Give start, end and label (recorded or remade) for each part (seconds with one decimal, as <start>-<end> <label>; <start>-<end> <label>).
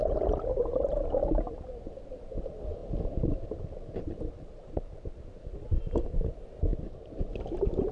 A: 0.0-2.8 recorded; 2.8-5.5 remade; 5.5-6.7 recorded; 6.7-7.3 remade; 7.3-7.9 recorded